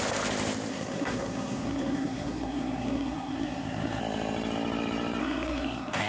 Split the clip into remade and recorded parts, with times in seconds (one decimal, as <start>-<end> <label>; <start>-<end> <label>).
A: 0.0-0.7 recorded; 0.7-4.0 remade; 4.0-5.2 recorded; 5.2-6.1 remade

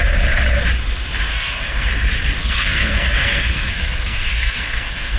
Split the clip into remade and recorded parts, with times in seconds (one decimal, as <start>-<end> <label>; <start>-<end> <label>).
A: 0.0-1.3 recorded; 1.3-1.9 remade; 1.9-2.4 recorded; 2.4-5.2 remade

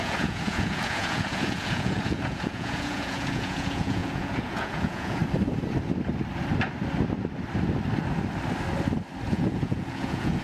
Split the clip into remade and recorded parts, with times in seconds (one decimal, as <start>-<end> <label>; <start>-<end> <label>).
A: 0.0-5.2 remade; 5.2-9.3 recorded; 9.3-10.4 remade